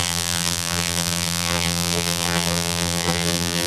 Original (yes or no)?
no